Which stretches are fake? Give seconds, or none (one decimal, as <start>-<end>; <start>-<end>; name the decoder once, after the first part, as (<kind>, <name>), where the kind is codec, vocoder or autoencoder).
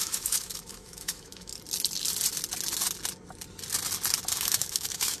0.0-1.5 (autoencoder, DAC-VAE); 4.4-5.2